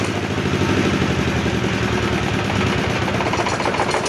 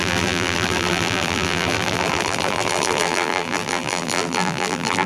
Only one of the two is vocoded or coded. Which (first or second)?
second